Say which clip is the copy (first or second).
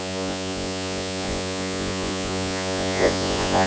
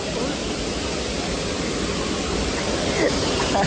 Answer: first